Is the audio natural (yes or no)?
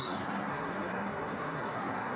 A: no